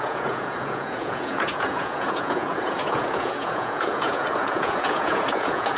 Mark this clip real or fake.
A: fake